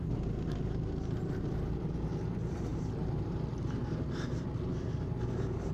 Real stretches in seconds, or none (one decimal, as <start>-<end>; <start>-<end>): 0.0-2.7; 3.6-5.7